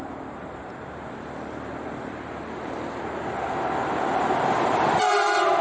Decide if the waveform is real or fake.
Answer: real